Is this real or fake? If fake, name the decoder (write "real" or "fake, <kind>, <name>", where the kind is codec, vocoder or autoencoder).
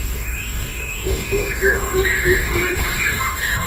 fake, codec, DAC